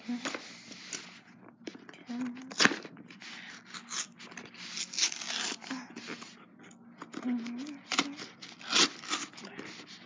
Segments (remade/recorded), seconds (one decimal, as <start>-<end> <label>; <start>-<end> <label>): 0.0-10.1 recorded